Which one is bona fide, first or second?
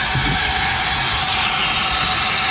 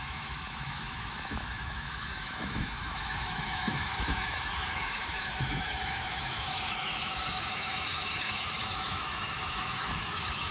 first